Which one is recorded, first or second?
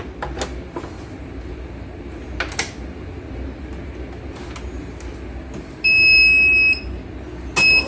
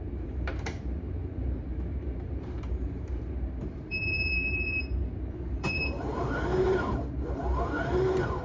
first